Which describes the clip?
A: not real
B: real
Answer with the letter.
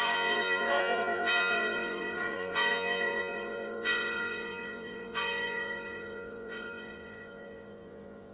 A